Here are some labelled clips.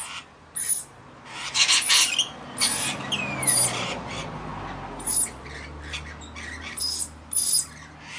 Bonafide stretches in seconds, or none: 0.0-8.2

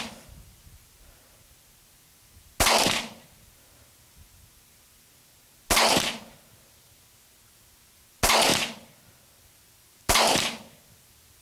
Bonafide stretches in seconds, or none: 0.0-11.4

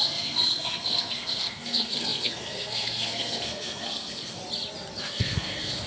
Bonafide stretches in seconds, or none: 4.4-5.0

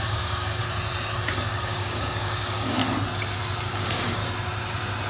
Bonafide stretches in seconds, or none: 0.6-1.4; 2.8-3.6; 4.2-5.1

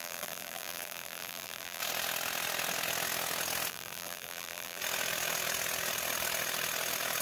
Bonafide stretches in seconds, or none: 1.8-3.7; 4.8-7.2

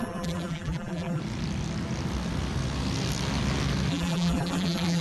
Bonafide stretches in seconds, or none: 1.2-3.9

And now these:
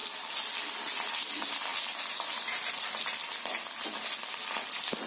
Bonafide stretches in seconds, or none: 0.0-5.1